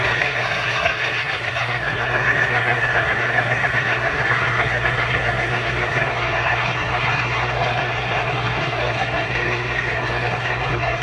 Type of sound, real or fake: fake